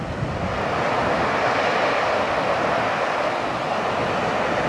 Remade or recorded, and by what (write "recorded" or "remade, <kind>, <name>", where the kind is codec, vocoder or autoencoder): recorded